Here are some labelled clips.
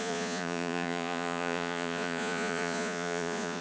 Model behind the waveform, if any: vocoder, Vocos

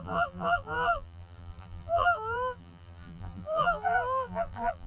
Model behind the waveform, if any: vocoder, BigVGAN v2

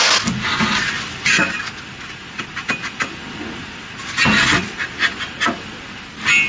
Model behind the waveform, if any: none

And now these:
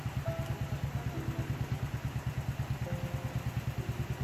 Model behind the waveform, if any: none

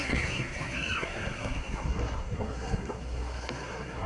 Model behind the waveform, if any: codec, SNAC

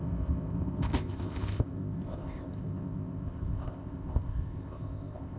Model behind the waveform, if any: codec, ZipCodec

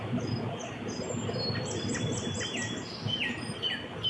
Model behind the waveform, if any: none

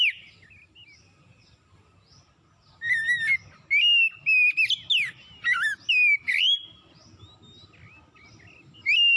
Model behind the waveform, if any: none